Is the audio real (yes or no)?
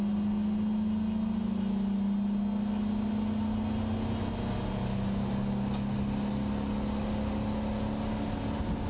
yes